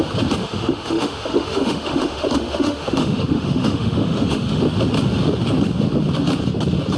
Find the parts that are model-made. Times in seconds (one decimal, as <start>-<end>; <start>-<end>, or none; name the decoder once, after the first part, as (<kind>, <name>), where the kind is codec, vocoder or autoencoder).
0.4-4.6 (autoencoder, DAC-VAE)

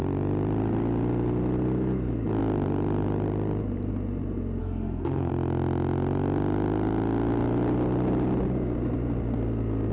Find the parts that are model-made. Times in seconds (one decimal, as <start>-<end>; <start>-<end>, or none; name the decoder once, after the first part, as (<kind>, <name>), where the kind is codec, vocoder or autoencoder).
4.6-5.3 (autoencoder, DAC-VAE)

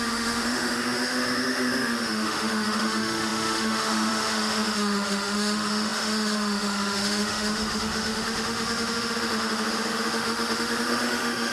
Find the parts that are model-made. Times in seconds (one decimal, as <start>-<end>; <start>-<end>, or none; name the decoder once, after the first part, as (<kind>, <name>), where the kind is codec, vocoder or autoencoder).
0.0-11.5 (autoencoder, DAC-VAE)

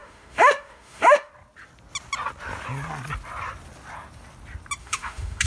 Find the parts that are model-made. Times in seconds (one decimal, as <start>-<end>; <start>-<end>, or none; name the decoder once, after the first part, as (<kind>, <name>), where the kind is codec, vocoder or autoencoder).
0.0-1.3 (autoencoder, DAC-VAE); 4.8-5.5

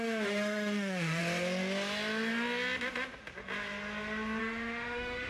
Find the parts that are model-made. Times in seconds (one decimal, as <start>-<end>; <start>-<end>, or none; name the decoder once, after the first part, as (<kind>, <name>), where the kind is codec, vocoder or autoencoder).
0.0-1.2 (autoencoder, DAC-VAE); 4.4-5.3

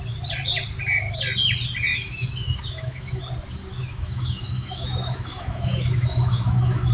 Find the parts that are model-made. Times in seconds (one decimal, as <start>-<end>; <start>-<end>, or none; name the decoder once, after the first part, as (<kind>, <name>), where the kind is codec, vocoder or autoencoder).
1.9-3.2 (autoencoder, DAC-VAE); 3.8-6.9

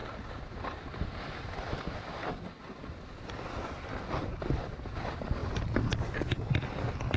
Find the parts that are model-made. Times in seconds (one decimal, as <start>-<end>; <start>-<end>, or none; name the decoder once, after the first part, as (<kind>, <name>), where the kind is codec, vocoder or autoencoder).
none

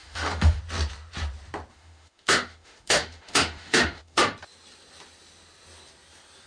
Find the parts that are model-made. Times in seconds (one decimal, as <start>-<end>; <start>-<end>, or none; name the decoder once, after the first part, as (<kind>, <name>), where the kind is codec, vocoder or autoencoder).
0.0-0.6 (autoencoder, DAC-VAE); 1.7-4.2